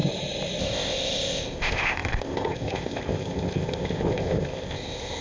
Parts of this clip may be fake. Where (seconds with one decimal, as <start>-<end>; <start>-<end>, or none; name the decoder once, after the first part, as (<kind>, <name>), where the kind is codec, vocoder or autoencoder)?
0.6-5.2 (codec, ZipCodec)